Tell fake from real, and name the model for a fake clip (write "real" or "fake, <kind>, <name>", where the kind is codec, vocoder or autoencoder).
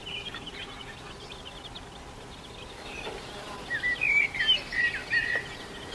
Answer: real